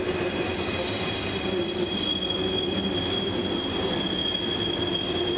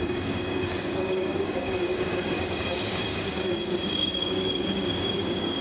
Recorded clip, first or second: first